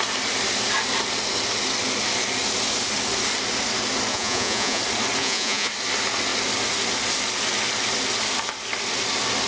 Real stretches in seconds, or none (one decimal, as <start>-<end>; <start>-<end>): 0.0-4.1; 4.8-5.2; 5.7-9.5